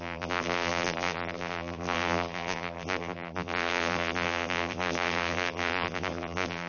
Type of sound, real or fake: fake